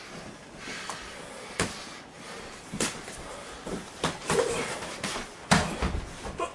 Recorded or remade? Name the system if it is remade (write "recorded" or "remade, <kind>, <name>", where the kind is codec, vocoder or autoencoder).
recorded